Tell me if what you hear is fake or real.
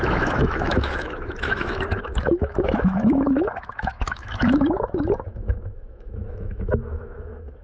fake